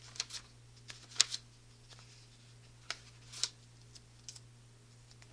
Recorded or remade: recorded